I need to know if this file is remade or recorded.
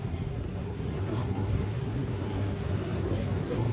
remade